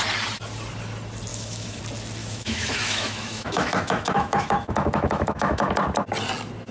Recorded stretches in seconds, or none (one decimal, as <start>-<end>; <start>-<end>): 0.0-1.3; 1.8-2.2; 5.7-6.7